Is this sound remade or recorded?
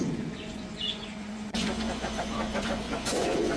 remade